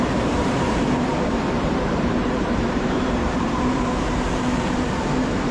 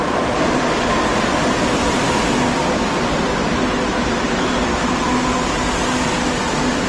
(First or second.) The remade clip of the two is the first